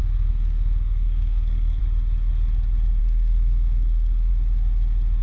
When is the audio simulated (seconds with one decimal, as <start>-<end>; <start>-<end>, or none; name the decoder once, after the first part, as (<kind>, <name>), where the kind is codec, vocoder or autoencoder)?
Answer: 0.0-1.8 (codec, SNAC); 3.0-4.3